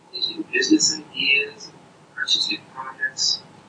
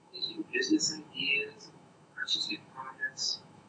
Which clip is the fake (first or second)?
second